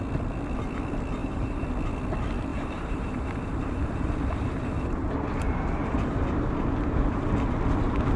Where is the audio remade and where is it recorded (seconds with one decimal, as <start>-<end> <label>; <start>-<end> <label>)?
0.0-1.2 recorded; 1.2-1.7 remade; 1.7-2.5 recorded; 2.5-7.3 remade; 7.3-8.2 recorded